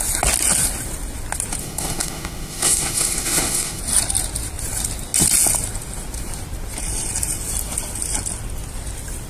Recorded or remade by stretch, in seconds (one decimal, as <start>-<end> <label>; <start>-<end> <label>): 0.0-1.6 recorded; 1.6-3.8 remade; 3.8-9.3 recorded